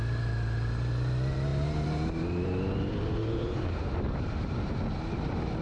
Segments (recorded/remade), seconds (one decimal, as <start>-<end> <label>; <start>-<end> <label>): 0.0-1.5 recorded; 1.5-4.8 remade; 4.8-5.6 recorded